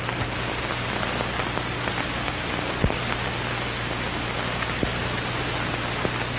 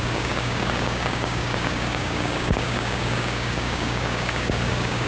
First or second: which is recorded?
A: first